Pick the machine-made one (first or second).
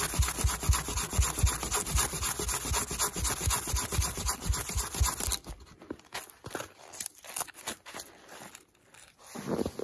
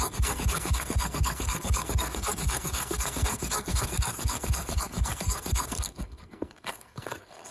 second